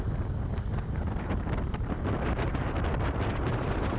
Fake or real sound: real